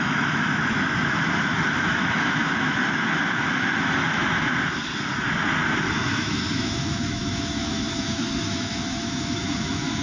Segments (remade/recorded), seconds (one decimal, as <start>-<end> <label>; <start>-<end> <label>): 0.0-4.2 remade; 4.2-5.9 recorded; 5.9-10.0 remade

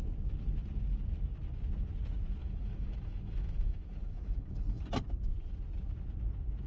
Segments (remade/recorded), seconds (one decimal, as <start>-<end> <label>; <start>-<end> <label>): 0.0-2.4 recorded; 2.4-4.8 remade; 4.8-6.7 recorded

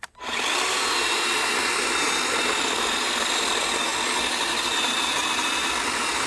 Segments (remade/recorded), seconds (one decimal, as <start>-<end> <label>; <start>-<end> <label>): 0.0-6.3 recorded